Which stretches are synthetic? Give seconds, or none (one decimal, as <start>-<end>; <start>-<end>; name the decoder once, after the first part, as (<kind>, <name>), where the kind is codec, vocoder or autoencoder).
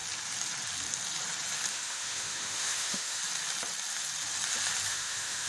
1.7-3.2 (autoencoder, DAC-VAE); 4.9-5.5